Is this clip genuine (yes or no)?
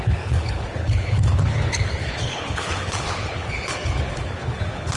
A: no